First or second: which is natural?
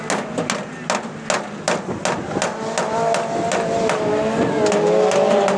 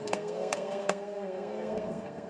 first